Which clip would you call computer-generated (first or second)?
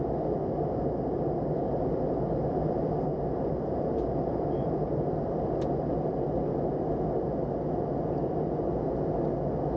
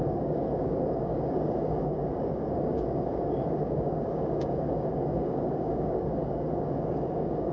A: second